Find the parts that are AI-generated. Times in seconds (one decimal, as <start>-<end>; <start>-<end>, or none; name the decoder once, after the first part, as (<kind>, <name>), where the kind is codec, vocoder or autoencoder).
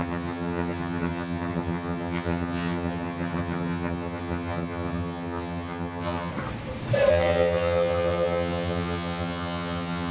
0.0-6.3 (vocoder, HiFi-GAN); 7.1-10.1